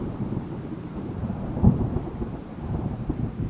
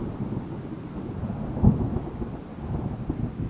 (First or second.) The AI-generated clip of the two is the first